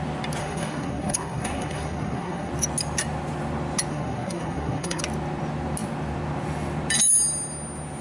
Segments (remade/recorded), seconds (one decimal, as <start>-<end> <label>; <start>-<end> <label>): 0.0-0.4 recorded; 0.4-2.5 remade; 2.5-3.9 recorded; 3.9-5.0 remade; 5.0-8.0 recorded